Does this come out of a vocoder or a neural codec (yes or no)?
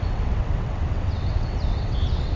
yes